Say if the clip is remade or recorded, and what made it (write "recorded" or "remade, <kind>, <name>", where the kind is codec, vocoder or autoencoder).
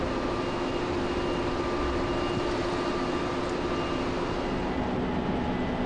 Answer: recorded